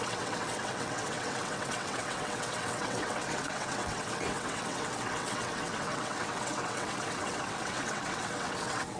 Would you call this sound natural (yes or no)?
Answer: no